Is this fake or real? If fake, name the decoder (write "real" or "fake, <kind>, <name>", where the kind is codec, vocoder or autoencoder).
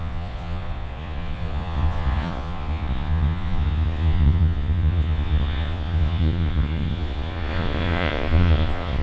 fake, vocoder, Vocos